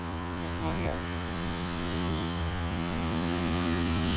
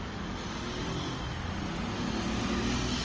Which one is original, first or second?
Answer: second